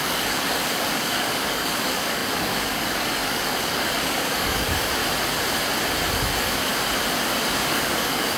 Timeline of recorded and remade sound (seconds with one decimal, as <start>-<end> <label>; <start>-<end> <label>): 0.0-5.0 remade; 5.0-6.1 recorded; 6.1-6.7 remade; 6.7-7.4 recorded; 7.4-8.4 remade